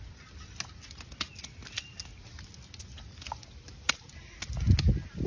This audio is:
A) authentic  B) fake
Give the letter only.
A